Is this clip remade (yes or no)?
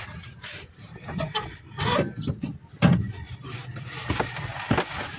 no